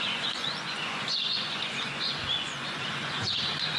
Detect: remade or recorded remade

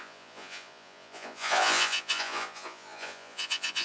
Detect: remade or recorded remade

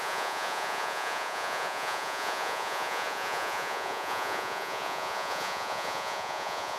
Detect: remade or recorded remade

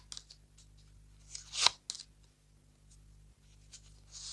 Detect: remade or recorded recorded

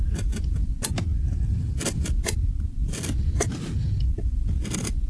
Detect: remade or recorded recorded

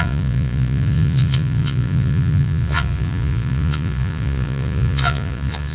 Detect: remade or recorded remade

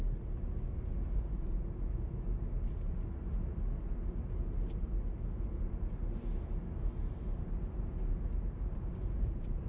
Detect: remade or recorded recorded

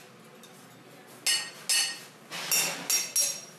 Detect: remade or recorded recorded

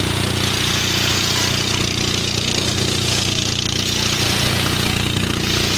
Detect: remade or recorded remade